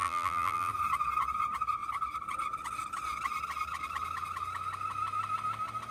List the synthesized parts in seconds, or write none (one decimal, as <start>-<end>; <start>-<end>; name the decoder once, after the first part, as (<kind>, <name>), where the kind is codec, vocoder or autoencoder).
0.0-0.7 (vocoder, BigVGAN v2)